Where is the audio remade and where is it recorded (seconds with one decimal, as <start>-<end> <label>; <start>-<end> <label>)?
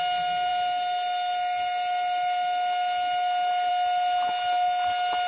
0.0-5.3 recorded